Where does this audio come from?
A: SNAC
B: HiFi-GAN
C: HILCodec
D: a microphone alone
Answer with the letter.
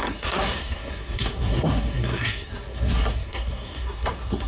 A